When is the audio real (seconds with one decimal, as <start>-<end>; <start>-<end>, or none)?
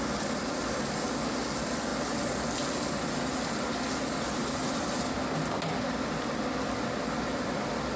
0.0-8.0